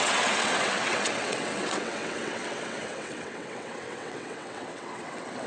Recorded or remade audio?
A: remade